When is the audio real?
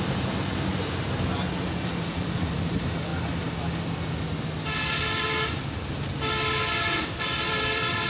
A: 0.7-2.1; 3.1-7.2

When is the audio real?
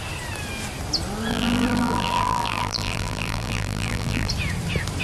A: 0.0-1.3; 4.3-5.0